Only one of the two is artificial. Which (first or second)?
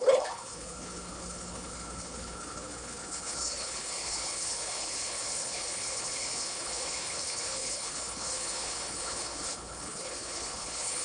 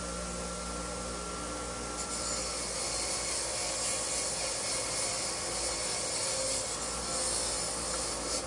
first